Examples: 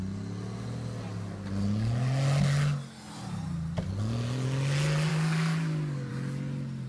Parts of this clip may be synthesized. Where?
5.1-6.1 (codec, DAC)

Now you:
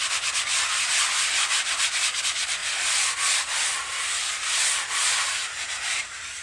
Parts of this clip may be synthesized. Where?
none

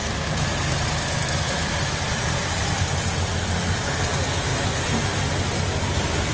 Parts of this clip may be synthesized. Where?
none

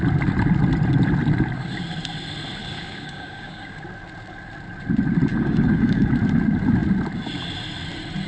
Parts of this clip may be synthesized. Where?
2.6-3.8 (codec, DAC); 5.3-6.1

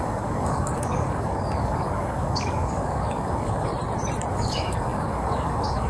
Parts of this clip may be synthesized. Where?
0.0-3.7 (codec, DAC); 4.3-5.9